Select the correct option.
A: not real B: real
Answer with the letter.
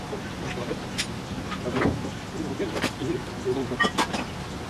B